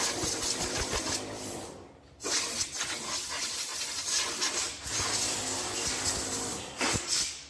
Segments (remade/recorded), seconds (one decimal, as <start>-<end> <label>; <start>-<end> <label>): 0.0-7.5 recorded